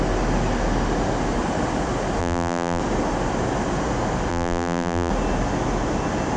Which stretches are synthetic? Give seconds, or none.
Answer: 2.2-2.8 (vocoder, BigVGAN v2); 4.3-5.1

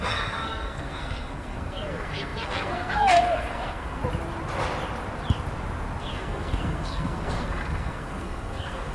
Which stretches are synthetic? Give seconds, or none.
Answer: 0.0-4.0 (codec, SNAC); 6.0-8.9